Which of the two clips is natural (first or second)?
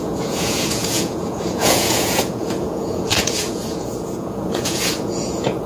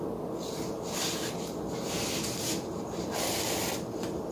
second